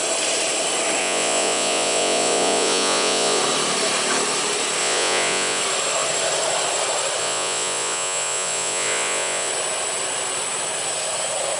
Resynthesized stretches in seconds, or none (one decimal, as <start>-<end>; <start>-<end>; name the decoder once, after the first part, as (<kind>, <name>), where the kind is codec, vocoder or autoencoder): 1.0-3.4 (vocoder, Vocos); 4.8-5.6; 7.2-9.5